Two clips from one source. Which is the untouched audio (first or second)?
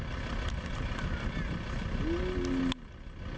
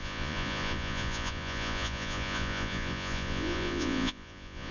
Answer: first